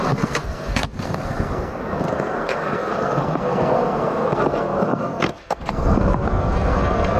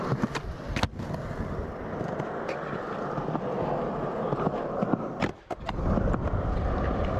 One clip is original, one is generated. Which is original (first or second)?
second